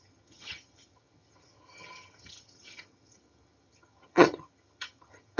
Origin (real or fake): fake